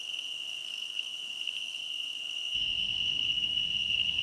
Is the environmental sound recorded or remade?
remade